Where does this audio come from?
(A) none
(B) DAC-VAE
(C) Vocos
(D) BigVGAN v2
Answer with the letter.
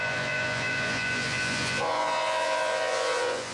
C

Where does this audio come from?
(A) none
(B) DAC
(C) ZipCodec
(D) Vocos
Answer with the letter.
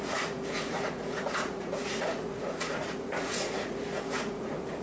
D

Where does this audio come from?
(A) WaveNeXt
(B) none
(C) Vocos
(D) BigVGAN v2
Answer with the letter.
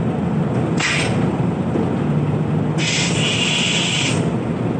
B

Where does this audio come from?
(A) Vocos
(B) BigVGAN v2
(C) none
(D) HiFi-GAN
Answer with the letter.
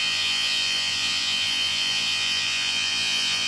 A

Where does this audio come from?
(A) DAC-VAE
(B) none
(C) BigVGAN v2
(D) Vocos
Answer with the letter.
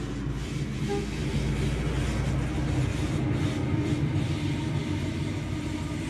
B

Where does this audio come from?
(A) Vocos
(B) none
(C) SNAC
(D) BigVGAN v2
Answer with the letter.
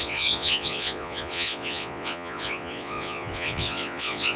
A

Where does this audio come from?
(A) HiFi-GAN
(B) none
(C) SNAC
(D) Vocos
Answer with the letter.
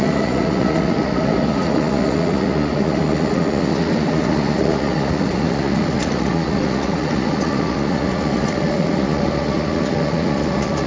D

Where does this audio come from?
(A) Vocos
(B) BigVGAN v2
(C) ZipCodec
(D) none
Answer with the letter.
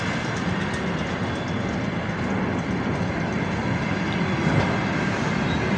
D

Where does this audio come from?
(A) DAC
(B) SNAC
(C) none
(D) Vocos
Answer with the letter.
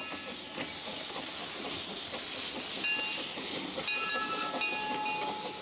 C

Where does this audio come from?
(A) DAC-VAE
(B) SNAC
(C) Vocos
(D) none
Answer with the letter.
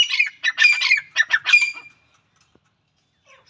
D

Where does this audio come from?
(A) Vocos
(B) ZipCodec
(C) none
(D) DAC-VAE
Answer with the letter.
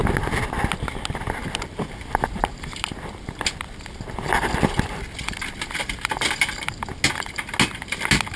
C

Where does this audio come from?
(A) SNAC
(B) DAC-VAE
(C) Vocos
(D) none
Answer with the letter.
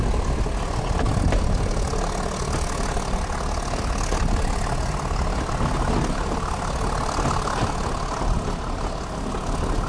D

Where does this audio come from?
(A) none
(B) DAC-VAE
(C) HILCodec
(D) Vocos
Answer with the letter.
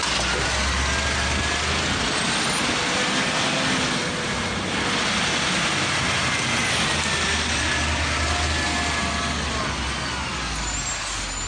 A